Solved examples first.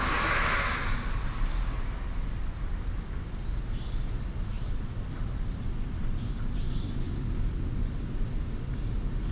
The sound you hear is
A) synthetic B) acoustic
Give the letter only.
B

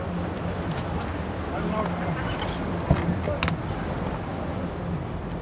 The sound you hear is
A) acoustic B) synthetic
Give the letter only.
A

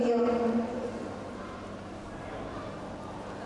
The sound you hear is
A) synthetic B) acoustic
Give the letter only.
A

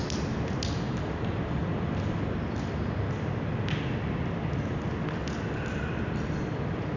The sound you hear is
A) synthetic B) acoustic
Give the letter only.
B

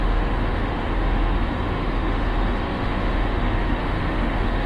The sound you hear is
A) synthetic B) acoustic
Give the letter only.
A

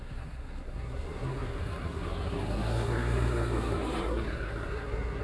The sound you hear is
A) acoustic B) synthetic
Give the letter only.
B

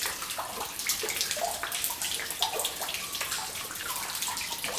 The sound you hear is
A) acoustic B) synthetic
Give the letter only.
A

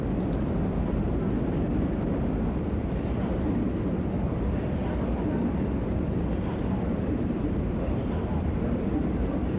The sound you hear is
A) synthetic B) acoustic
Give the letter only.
B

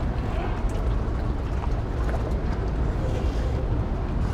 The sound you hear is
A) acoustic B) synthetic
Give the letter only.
A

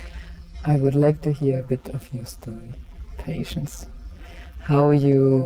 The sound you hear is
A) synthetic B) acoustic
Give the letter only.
A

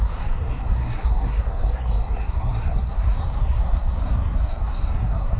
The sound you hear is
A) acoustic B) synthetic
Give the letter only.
B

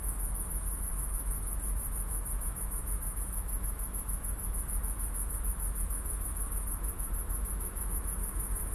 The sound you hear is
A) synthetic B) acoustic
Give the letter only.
A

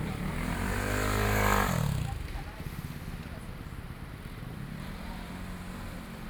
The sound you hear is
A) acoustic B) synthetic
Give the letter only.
B